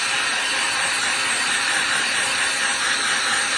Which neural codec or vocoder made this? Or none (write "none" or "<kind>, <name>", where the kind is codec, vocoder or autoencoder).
none